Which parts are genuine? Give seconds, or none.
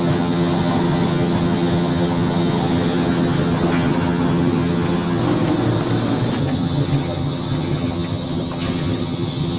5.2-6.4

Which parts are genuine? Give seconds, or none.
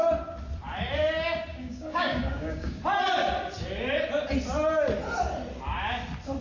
0.0-1.5; 2.8-6.4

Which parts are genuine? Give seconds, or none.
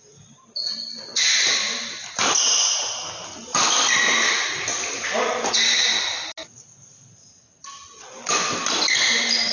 0.0-9.5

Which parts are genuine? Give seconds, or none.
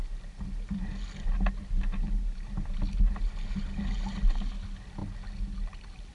0.0-6.1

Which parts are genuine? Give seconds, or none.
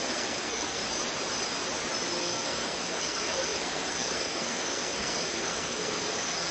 0.8-2.2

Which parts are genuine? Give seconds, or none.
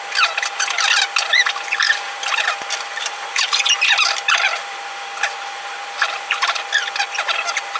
0.0-1.8; 2.3-2.9; 3.6-4.6; 6.6-7.8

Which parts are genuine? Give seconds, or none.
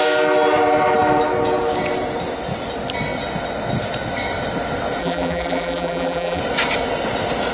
0.0-5.0; 6.4-7.5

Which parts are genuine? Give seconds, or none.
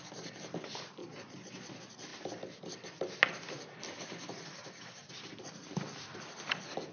0.0-1.0; 1.7-6.9